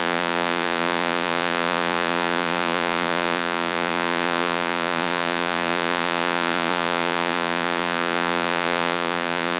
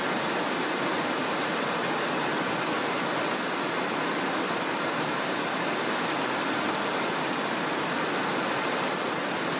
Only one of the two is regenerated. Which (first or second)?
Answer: first